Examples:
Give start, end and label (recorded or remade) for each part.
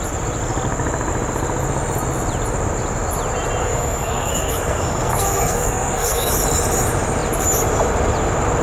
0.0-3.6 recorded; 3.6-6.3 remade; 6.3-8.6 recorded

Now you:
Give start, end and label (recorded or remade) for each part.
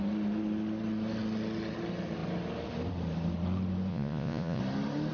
0.0-3.9 recorded; 3.9-4.6 remade; 4.6-5.1 recorded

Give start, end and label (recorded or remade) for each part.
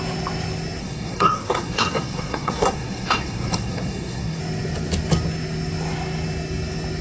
0.0-0.8 recorded; 0.8-4.4 remade; 4.4-7.0 recorded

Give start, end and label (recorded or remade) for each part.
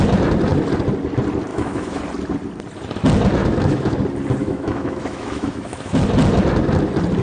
0.0-1.5 recorded; 1.5-2.0 remade; 2.0-3.4 recorded; 3.4-4.0 remade; 4.0-4.4 recorded; 4.4-6.0 remade; 6.0-7.2 recorded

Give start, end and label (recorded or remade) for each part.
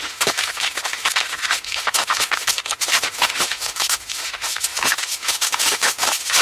0.0-6.4 remade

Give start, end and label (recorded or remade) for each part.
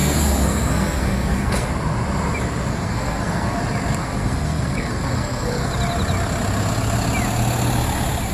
0.0-1.7 remade; 1.7-2.7 recorded; 2.7-3.6 remade; 3.6-4.0 recorded; 4.0-5.7 remade; 5.7-8.3 recorded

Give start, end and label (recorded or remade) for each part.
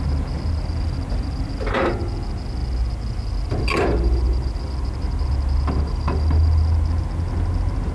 0.0-7.9 recorded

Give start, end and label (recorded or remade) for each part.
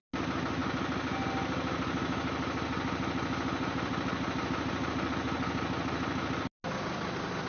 0.0-7.5 recorded